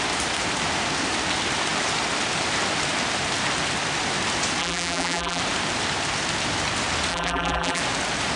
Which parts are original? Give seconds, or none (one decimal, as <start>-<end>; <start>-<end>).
0.0-4.6; 5.4-7.1; 7.8-8.4